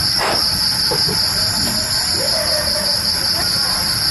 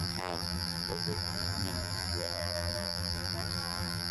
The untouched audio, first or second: first